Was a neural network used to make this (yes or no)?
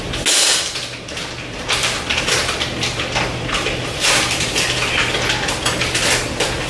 no